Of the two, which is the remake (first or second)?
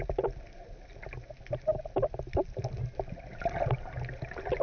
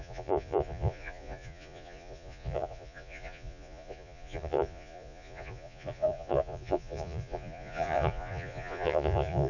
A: second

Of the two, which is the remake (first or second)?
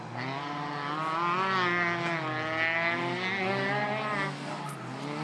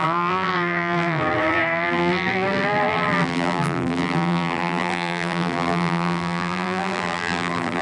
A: second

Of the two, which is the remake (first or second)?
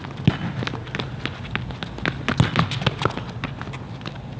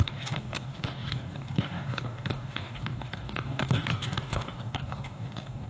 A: second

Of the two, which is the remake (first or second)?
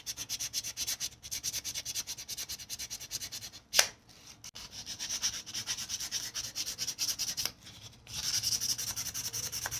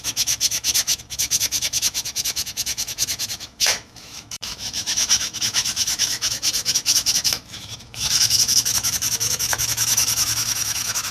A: second